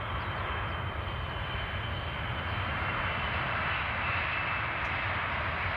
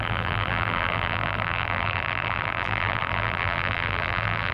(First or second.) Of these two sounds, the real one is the first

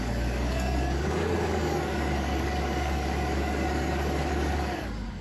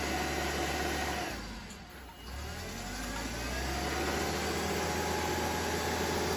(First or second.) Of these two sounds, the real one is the second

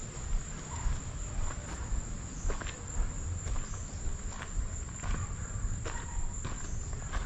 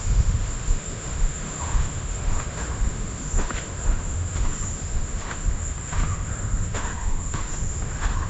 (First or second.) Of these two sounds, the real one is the first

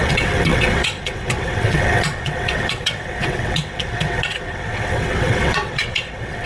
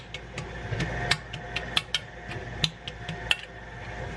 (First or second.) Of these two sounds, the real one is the second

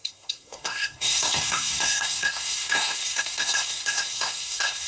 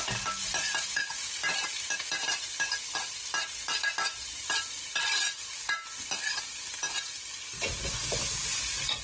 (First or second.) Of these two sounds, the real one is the second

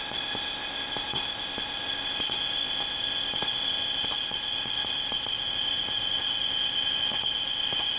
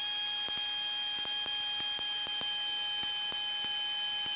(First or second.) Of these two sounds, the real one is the second